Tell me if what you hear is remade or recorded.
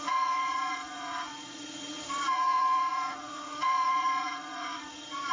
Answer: remade